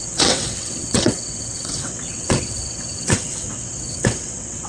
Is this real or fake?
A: fake